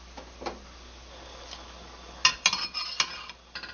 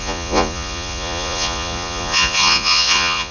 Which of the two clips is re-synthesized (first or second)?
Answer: second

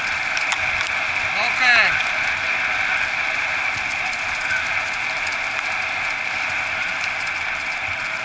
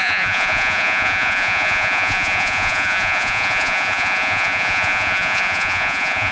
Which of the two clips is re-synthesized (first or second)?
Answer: second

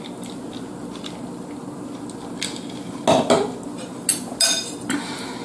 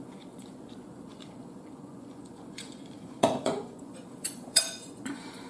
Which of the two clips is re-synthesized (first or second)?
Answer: second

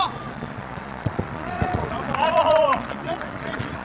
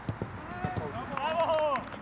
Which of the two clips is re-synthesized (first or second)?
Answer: first